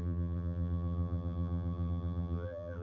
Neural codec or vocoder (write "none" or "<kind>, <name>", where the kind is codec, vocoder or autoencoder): vocoder, BigVGAN v2